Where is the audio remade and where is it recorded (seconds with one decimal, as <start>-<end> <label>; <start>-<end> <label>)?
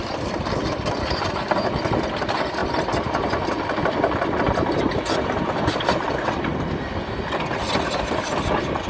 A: 0.0-8.9 recorded